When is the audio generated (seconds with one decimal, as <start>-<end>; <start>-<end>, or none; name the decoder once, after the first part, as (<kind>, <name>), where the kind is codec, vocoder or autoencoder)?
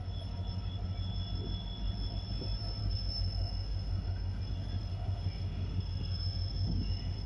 2.8-4.4 (autoencoder, DAC-VAE); 4.9-7.3